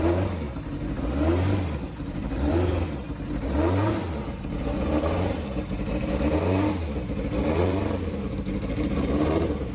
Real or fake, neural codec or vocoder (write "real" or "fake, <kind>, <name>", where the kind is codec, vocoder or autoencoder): fake, vocoder, BigVGAN v2